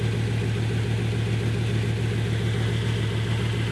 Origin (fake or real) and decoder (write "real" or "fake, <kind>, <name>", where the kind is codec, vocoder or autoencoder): real